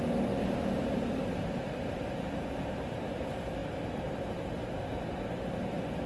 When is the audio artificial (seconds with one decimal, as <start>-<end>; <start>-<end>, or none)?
0.4-2.0; 3.6-5.1